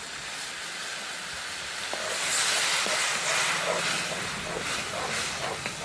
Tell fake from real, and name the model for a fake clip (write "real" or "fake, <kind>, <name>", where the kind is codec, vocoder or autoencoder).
real